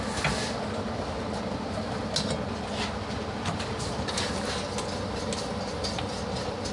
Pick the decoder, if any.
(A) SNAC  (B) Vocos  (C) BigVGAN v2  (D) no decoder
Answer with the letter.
D